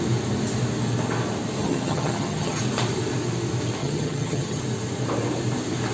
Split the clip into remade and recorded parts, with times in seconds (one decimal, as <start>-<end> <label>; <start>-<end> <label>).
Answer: 0.0-1.6 recorded; 1.6-2.6 remade; 2.6-3.8 recorded; 3.8-4.6 remade; 4.6-5.9 recorded